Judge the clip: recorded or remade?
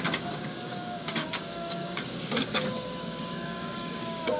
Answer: remade